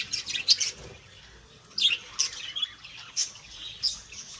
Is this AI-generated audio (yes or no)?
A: no